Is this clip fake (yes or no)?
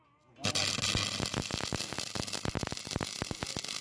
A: no